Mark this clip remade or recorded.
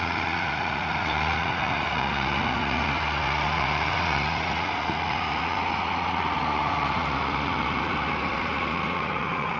remade